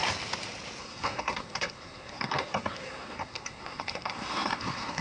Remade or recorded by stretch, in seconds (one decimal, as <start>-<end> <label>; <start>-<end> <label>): 0.0-0.8 recorded; 0.8-5.0 remade